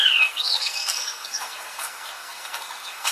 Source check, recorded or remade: remade